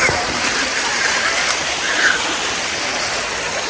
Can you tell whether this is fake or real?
real